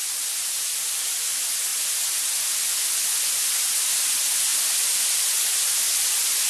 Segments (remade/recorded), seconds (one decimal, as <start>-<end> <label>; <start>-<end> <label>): 0.0-6.5 recorded